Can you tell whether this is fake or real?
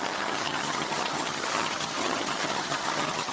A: fake